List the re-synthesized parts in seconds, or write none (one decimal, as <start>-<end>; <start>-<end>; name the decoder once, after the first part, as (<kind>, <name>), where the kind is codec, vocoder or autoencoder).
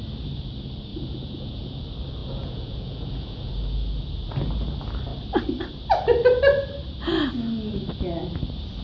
0.9-1.8 (vocoder, Vocos); 2.2-3.5